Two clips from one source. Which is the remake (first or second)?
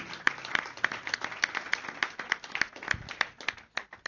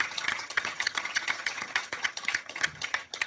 second